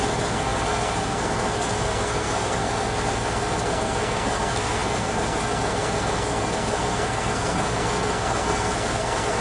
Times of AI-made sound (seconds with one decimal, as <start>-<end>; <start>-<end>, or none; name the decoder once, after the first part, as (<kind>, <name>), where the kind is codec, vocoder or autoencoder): 0.0-9.4 (codec, SNAC)